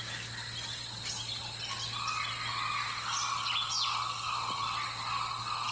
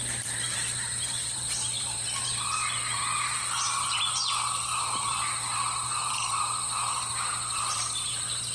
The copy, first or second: second